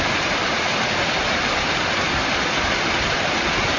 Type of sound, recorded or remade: recorded